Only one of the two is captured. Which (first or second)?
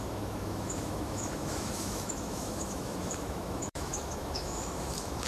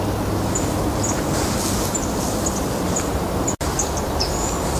second